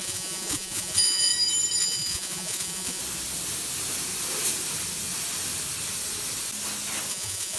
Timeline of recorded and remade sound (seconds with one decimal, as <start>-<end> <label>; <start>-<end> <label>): 0.0-1.3 remade; 1.3-1.8 recorded; 1.8-3.0 remade; 3.0-7.1 recorded; 7.1-7.6 remade